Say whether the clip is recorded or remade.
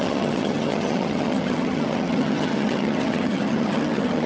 remade